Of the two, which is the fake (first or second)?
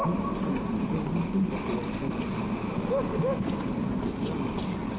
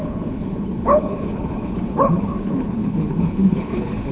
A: second